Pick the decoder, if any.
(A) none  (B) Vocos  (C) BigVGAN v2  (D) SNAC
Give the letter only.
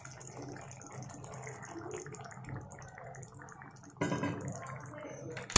A